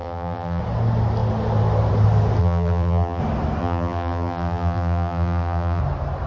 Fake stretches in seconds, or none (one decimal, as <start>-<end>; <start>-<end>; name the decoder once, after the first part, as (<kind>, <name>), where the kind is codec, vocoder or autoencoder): 0.0-0.6 (vocoder, BigVGAN v2); 2.4-3.2; 3.6-5.8